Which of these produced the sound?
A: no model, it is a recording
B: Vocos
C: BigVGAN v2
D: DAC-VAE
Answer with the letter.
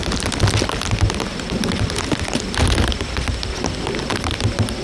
A